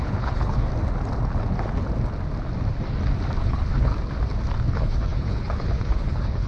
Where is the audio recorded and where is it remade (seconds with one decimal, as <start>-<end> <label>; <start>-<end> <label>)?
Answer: 0.0-0.7 remade; 0.7-3.4 recorded; 3.4-3.9 remade; 3.9-4.6 recorded; 4.6-6.5 remade